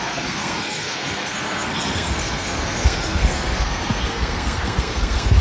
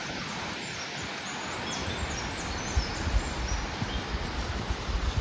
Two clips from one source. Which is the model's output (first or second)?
first